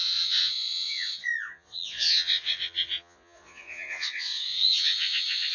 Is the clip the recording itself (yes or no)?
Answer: no